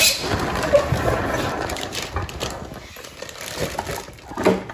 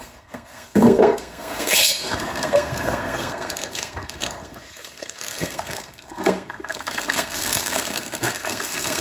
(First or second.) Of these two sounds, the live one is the first